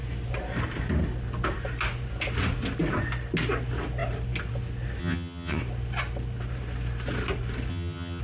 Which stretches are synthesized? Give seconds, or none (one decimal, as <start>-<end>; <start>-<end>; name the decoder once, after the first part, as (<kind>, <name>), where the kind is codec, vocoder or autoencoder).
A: 5.0-5.6 (vocoder, HiFi-GAN); 7.7-8.2